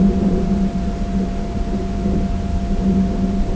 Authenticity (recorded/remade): recorded